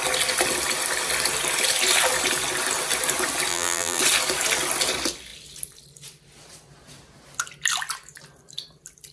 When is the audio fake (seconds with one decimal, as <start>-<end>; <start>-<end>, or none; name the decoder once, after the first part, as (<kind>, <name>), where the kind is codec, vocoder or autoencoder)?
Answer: 3.5-4.0 (vocoder, BigVGAN v2)